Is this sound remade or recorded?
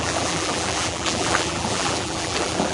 remade